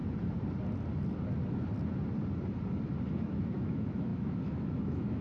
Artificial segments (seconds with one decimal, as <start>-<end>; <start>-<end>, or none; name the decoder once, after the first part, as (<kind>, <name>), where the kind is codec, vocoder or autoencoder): 3.1-5.2 (autoencoder, DAC-VAE)